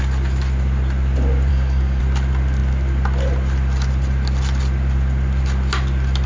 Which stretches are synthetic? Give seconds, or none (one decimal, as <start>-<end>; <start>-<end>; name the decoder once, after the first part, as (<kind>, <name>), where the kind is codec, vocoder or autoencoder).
1.5-2.0 (codec, DAC)